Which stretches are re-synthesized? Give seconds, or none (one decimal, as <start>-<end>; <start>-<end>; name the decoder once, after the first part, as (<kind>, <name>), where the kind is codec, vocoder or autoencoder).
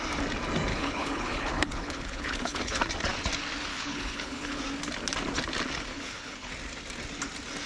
0.7-2.8 (codec, HILCodec); 3.7-4.6; 5.9-6.5